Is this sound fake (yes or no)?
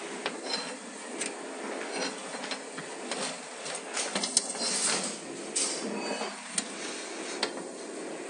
no